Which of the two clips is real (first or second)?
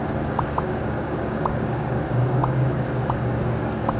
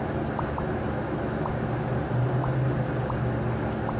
second